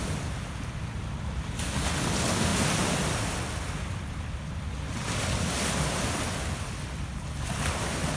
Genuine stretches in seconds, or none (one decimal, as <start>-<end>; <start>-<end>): 0.0-8.2